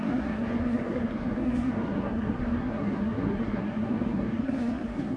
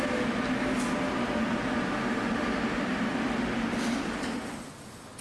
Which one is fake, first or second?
first